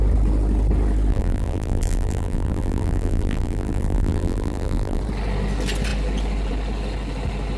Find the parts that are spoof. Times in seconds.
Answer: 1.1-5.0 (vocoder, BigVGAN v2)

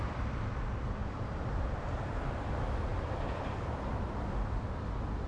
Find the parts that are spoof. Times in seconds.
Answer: 2.9-4.2 (vocoder, BigVGAN v2)

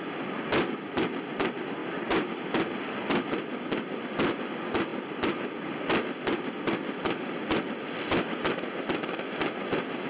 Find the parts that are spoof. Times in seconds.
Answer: none

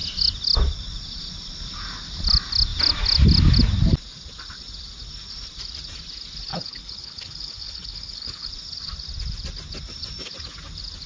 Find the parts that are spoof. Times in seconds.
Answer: 6.5-8.5 (codec, HILCodec)

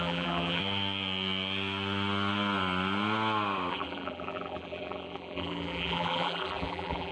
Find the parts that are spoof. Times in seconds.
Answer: 0.0-0.6 (vocoder, BigVGAN v2); 3.7-7.1

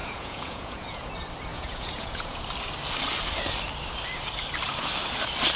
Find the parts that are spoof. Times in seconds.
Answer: 0.0-1.1 (vocoder, Vocos); 1.5-2.4